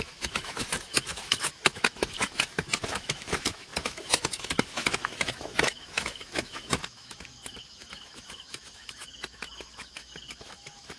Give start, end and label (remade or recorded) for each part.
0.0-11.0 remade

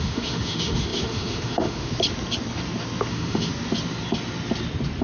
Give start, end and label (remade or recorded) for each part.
0.0-1.9 remade; 1.9-3.1 recorded; 3.1-3.5 remade; 3.5-5.0 recorded

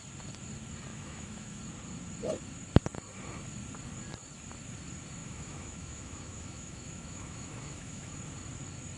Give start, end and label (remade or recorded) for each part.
0.0-0.9 recorded; 0.9-1.6 remade; 1.6-5.2 recorded; 5.2-8.1 remade; 8.1-9.0 recorded

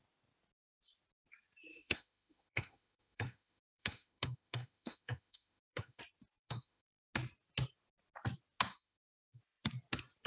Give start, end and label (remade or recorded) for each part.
0.0-1.7 recorded; 1.7-6.0 remade; 6.0-6.4 recorded; 6.4-7.0 remade; 7.0-8.7 recorded; 8.7-9.4 remade; 9.4-10.3 recorded

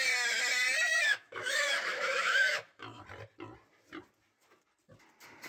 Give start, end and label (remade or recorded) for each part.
0.0-0.9 recorded; 0.9-3.0 remade; 3.0-5.5 recorded